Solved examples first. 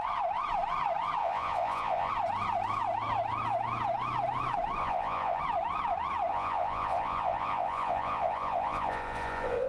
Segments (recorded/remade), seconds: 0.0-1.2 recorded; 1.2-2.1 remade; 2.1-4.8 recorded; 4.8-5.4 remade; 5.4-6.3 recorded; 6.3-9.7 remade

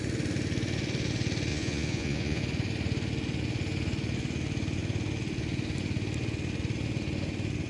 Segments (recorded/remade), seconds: 0.0-1.5 recorded; 1.5-2.4 remade; 2.4-7.7 recorded

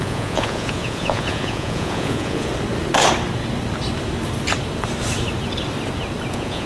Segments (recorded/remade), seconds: 0.0-2.5 remade; 2.5-6.3 recorded; 6.3-6.7 remade

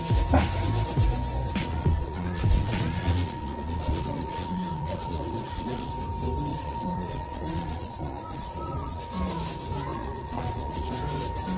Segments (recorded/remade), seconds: 0.0-1.6 recorded; 1.6-5.9 remade; 5.9-6.5 recorded; 6.5-9.0 remade; 9.0-9.9 recorded; 9.9-10.9 remade; 10.9-11.6 recorded